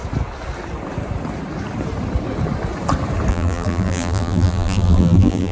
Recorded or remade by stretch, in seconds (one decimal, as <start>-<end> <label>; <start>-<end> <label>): 0.0-3.3 recorded; 3.3-5.5 remade